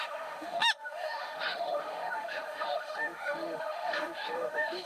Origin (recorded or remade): remade